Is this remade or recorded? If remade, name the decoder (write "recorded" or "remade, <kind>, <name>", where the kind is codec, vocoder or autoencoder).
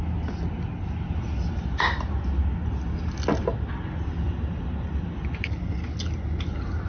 recorded